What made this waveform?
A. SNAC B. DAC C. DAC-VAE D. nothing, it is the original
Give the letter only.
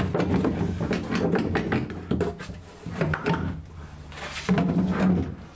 D